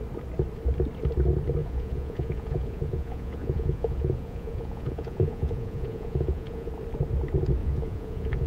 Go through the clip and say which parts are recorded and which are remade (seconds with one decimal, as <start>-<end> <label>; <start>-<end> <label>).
0.0-1.6 recorded; 1.6-6.7 remade; 6.7-7.6 recorded; 7.6-8.5 remade